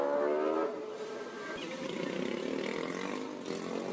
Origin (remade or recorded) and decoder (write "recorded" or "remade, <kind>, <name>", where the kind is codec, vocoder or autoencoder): recorded